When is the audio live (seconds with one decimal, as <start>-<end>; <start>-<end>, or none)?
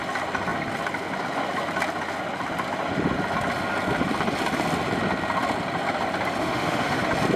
0.0-6.4; 7.0-7.4